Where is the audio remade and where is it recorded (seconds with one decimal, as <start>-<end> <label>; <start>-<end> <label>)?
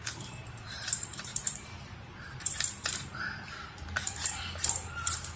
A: 0.0-5.4 remade